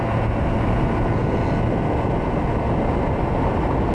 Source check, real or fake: real